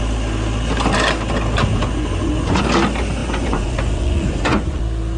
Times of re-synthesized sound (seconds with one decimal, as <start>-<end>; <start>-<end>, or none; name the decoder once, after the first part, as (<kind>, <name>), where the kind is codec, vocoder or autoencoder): 1.7-2.6 (vocoder, Vocos); 3.2-4.8

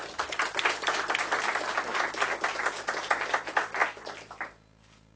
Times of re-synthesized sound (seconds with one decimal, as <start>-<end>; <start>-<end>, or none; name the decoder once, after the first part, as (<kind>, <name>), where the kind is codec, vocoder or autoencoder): none

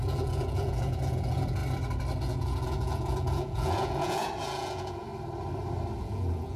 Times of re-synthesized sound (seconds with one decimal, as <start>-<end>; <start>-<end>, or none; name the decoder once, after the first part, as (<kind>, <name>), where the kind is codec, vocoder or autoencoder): 0.0-1.6 (vocoder, Vocos); 2.2-5.1; 6.0-6.6

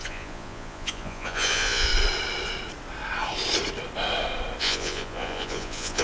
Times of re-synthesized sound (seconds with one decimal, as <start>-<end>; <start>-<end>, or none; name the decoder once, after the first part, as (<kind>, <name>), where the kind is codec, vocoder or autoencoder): 0.0-1.9 (vocoder, Vocos); 4.6-6.0

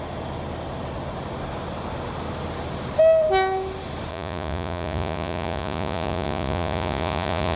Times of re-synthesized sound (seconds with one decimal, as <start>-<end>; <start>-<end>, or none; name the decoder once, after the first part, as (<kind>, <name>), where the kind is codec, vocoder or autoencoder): 4.1-7.6 (vocoder, Vocos)

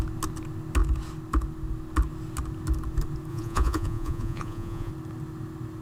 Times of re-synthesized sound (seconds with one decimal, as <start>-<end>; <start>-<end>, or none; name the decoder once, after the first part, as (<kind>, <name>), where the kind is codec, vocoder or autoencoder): 3.3-4.9 (vocoder, Vocos)

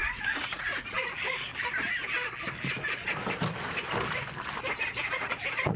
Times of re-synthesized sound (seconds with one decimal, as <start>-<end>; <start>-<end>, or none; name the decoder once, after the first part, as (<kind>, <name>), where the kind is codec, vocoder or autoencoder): 0.0-1.5 (vocoder, Vocos); 4.7-5.8